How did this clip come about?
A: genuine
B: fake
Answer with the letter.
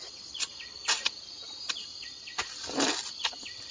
A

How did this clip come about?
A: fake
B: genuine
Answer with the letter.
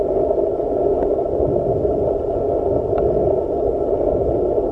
B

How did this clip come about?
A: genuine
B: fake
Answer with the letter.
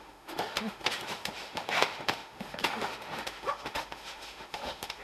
B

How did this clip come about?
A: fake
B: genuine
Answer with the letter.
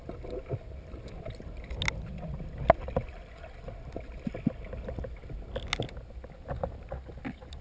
B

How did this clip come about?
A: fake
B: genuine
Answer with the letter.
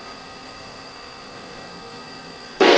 A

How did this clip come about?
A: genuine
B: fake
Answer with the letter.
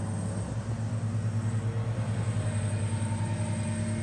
A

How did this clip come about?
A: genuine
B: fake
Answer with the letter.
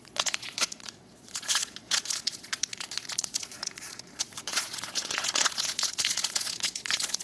B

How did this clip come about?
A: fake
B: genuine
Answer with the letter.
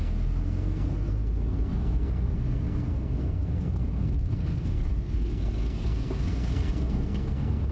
A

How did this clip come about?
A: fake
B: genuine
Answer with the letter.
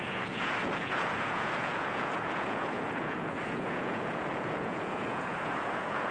A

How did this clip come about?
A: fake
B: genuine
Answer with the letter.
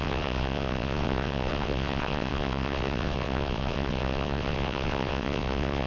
A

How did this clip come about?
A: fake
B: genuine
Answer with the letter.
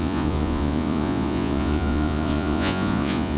A